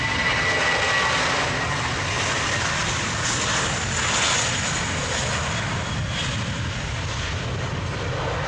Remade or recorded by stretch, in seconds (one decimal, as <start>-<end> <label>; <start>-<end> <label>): 0.0-8.5 recorded